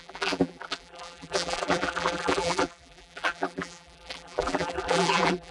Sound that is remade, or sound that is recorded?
remade